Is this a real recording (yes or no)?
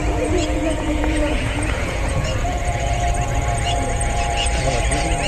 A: no